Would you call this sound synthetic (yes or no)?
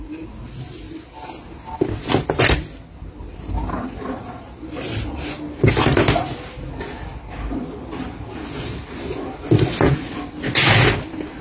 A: no